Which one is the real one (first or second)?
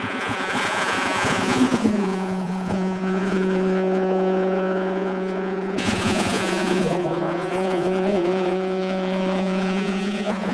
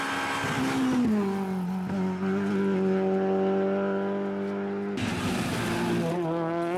second